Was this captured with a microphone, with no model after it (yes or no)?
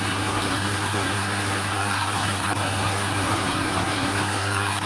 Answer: no